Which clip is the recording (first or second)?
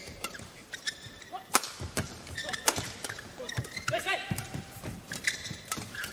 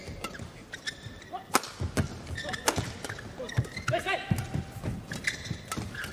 second